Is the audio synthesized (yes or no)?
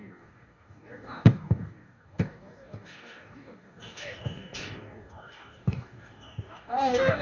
yes